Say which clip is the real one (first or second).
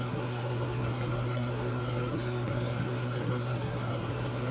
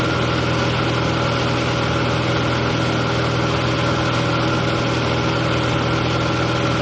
second